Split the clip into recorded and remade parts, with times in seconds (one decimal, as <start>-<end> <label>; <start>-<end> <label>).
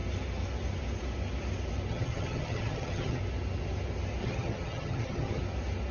0.0-1.9 recorded; 1.9-3.2 remade; 3.2-4.2 recorded; 4.2-5.4 remade; 5.4-5.9 recorded